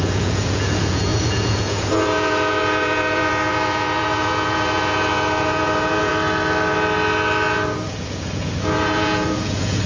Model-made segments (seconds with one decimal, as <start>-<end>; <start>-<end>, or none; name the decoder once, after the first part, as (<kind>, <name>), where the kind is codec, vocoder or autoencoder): 0.0-6.1 (vocoder, Vocos); 7.5-9.9